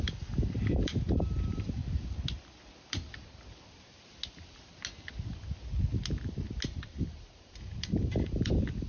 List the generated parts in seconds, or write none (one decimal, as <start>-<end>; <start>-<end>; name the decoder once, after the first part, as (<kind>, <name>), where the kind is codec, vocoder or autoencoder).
0.0-1.8 (vocoder, BigVGAN v2); 6.7-8.9